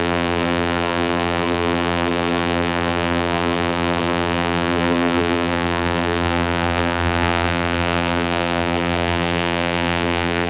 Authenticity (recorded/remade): remade